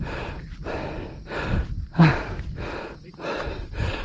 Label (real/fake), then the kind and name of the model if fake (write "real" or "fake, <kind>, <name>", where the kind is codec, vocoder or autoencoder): real